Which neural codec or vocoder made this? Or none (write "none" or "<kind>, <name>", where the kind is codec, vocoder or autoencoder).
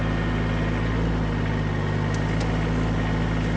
none